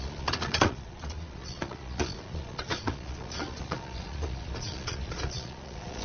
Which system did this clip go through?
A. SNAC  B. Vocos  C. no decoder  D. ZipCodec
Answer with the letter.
B